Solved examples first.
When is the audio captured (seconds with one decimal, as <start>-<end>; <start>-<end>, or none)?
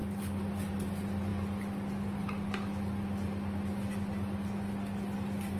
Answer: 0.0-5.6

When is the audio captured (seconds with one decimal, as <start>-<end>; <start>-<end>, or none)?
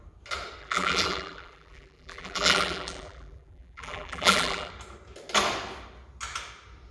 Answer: 0.0-0.6; 4.7-6.9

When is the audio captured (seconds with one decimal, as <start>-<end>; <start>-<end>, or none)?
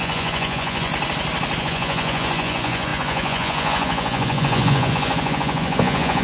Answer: 0.9-1.6